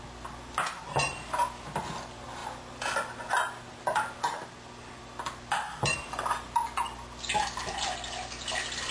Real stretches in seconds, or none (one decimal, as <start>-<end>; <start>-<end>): 0.0-8.9